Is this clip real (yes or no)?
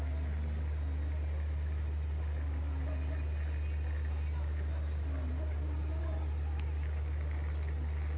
yes